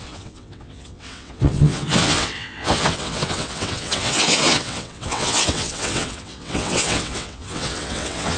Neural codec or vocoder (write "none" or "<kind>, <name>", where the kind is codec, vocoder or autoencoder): vocoder, WaveNeXt